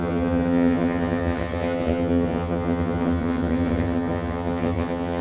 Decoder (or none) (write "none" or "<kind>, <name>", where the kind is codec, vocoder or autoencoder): vocoder, HiFi-GAN